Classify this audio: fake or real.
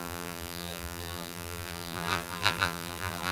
fake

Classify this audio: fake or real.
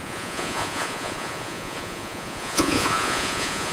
fake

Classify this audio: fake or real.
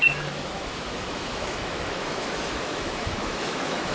fake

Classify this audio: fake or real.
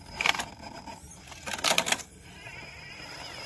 real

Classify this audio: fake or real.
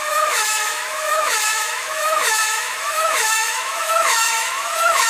fake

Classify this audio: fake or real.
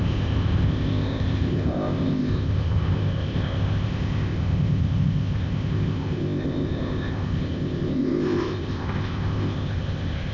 fake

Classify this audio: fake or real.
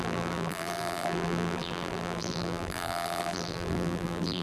fake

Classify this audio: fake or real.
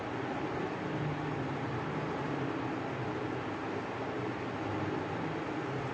real